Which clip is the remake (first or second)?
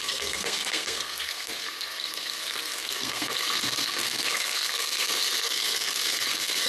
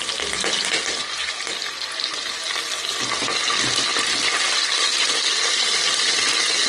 first